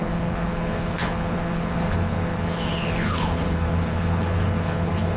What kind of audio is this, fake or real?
fake